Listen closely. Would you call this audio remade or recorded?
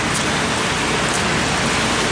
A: recorded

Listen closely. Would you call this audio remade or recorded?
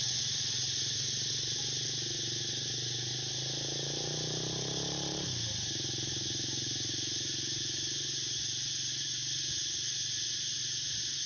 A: recorded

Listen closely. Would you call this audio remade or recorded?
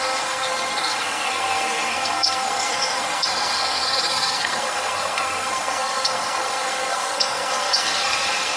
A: remade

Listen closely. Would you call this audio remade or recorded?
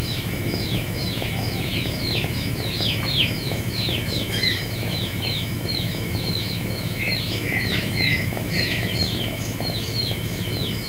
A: remade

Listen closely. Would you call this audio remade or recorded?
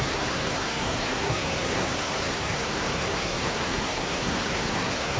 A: remade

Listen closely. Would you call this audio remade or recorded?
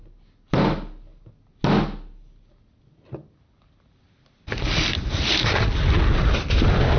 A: recorded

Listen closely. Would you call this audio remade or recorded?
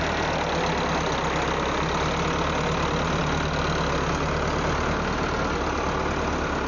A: recorded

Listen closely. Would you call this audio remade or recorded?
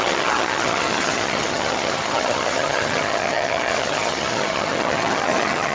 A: remade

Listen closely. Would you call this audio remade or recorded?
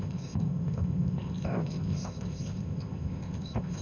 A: remade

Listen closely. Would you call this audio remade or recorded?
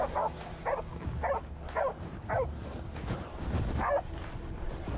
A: recorded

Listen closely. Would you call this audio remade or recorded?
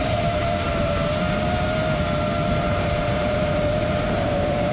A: remade